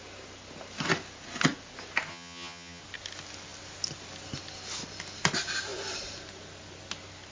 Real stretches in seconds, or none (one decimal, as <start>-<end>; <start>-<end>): 0.0-2.1; 2.8-7.3